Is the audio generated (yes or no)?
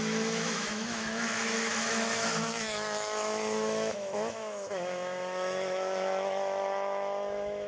yes